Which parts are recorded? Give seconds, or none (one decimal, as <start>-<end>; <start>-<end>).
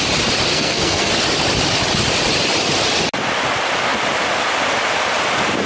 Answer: 0.0-0.5; 1.1-5.7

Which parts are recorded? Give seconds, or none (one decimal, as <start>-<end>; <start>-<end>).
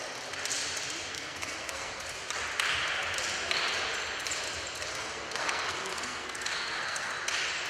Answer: 0.0-1.1; 2.0-4.9; 7.1-7.7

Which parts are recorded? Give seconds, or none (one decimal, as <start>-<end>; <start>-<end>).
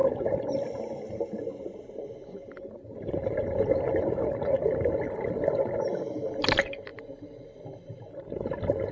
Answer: 0.0-8.9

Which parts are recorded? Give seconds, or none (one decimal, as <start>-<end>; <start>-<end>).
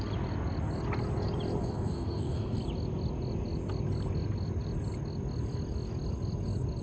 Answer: 0.0-1.6; 2.6-6.8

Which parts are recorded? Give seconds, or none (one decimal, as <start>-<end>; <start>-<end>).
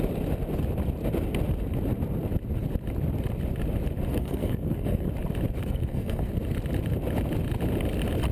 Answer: 0.0-4.1; 5.1-5.6; 6.3-8.3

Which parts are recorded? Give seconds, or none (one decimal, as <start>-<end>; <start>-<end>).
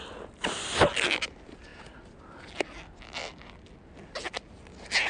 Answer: 0.0-5.1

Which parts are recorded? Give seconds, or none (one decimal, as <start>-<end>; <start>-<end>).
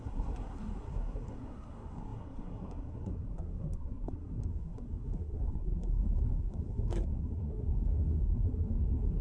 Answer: none